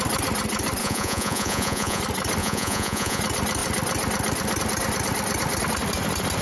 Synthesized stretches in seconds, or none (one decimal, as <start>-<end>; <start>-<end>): 0.8-2.0; 2.4-3.2